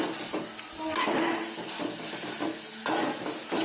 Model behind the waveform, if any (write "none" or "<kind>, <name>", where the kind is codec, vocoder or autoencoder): none